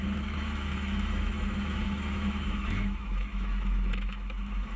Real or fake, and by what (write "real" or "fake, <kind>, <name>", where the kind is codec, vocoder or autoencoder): fake, autoencoder, DAC-VAE